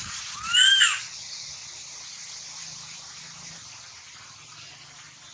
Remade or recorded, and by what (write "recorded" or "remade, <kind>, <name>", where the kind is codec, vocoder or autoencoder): recorded